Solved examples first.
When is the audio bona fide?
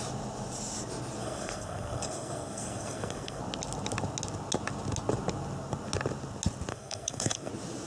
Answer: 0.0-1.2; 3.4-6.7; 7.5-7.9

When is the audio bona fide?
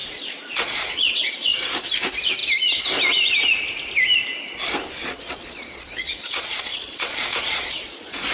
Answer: 1.6-5.0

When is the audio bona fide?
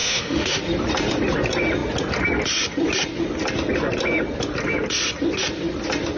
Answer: 0.6-6.2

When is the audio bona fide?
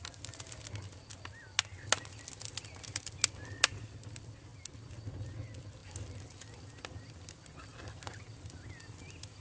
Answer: 0.0-9.4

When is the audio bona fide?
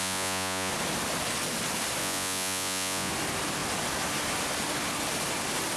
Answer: 0.7-2.0; 3.1-5.8